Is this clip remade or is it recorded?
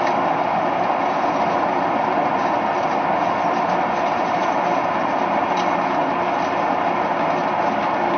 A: recorded